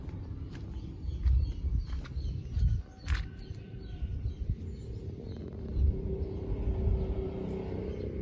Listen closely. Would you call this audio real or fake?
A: real